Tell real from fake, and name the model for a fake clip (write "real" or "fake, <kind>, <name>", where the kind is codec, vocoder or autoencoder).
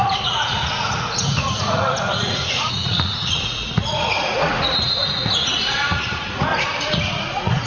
fake, vocoder, Vocos